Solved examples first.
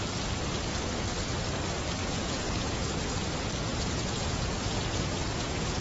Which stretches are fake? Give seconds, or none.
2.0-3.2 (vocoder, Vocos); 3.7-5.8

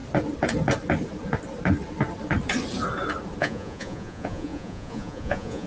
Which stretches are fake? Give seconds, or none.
3.4-5.7 (vocoder, Vocos)